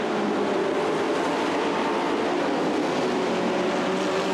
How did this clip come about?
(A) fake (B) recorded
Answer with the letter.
B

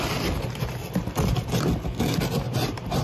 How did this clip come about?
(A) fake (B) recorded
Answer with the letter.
B